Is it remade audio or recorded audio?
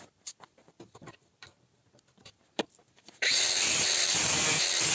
remade